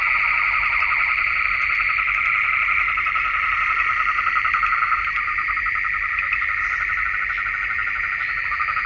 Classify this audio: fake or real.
real